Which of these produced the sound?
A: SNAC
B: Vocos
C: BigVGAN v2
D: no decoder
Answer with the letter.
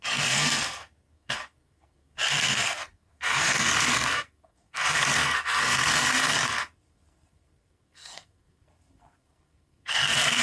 A